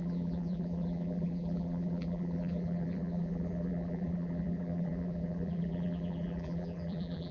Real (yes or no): no